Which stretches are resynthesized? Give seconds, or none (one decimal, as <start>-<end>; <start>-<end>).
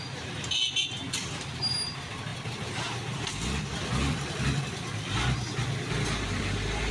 none